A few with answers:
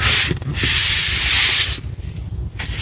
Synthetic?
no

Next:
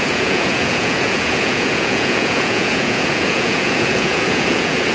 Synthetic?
yes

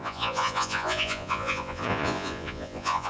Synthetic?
yes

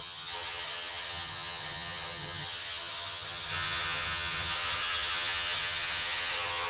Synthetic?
yes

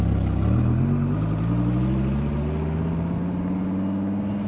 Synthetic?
no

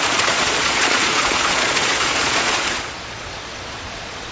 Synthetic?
yes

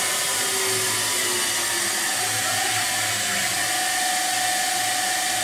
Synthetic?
no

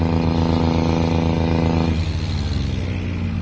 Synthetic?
no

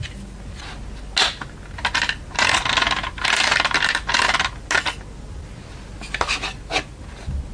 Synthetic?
no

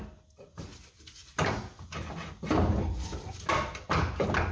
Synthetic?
no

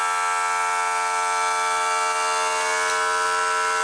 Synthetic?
no